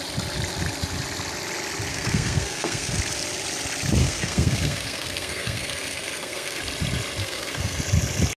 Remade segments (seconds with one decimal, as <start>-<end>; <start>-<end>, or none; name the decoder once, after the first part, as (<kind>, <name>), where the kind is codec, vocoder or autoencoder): 1.9-3.0 (codec, SNAC); 4.0-6.6; 7.2-7.8